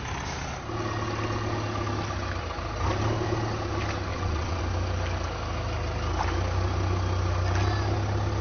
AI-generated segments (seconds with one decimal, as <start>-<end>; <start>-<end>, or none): 4.1-4.6